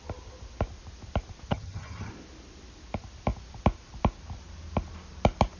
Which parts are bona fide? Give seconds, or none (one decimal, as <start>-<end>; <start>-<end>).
0.0-1.5; 2.1-5.6